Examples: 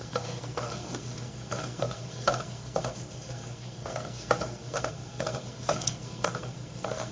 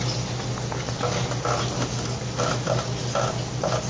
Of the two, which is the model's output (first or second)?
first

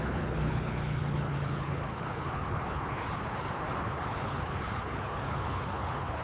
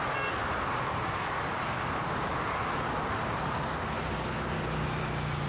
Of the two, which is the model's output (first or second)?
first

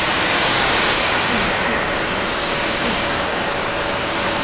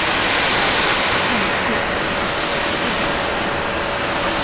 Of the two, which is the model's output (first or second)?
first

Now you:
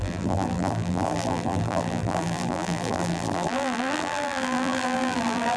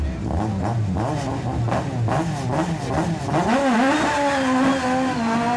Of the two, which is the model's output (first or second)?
first